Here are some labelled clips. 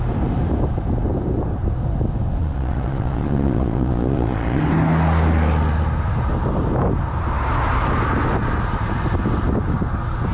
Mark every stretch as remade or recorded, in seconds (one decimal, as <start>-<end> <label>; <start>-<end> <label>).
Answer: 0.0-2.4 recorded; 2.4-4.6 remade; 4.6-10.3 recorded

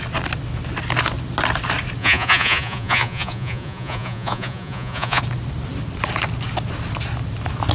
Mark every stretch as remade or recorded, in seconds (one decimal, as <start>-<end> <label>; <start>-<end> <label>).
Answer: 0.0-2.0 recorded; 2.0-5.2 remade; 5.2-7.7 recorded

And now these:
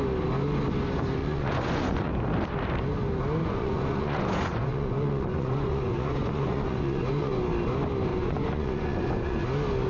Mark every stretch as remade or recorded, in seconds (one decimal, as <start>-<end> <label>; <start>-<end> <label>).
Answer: 0.0-1.2 recorded; 1.2-2.1 remade; 2.1-3.4 recorded; 3.4-7.4 remade; 7.4-8.1 recorded; 8.1-9.4 remade; 9.4-9.9 recorded

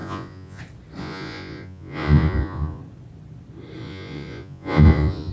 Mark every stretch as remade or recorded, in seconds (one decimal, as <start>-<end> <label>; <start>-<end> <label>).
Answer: 0.0-0.6 remade; 0.6-1.0 recorded; 1.0-2.8 remade; 2.8-3.8 recorded; 3.8-5.3 remade

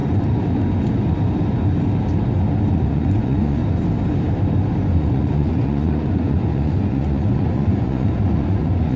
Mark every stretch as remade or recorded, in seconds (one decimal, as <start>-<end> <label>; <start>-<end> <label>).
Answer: 0.0-2.7 recorded; 2.7-3.6 remade; 3.6-4.9 recorded; 4.9-9.0 remade

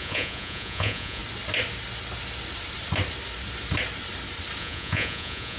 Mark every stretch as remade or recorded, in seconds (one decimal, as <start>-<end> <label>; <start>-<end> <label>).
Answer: 0.0-1.2 remade; 1.2-4.6 recorded; 4.6-5.6 remade

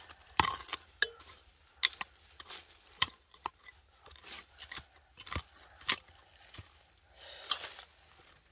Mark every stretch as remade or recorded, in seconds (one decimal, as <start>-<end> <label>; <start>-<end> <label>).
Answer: 0.0-3.0 recorded; 3.0-3.5 remade; 3.5-8.5 recorded